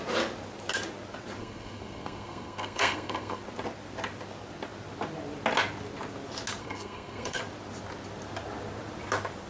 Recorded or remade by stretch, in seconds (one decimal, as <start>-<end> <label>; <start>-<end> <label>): 0.0-1.4 recorded; 1.4-3.4 remade; 3.4-6.6 recorded; 6.6-7.4 remade; 7.4-9.5 recorded